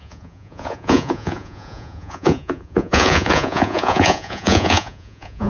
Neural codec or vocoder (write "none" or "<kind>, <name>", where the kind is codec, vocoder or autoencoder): vocoder, Vocos